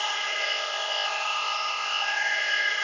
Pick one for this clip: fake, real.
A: fake